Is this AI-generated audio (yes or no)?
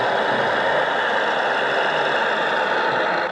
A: no